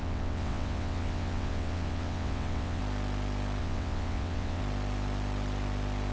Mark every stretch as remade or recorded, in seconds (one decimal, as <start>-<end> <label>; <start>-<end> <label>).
0.0-2.8 remade; 2.8-3.6 recorded; 3.6-4.6 remade; 4.6-6.1 recorded